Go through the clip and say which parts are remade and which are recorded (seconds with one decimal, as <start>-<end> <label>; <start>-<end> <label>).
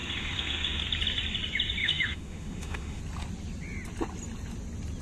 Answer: 0.0-0.8 remade; 0.8-1.8 recorded; 1.8-3.0 remade; 3.0-5.0 recorded